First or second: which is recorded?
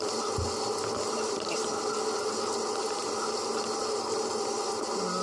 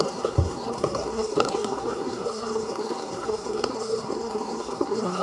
first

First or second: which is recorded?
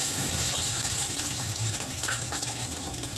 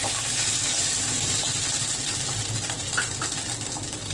second